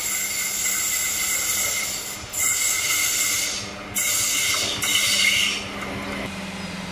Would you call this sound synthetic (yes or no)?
no